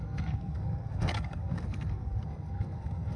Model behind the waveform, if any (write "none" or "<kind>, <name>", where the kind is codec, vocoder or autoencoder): codec, SNAC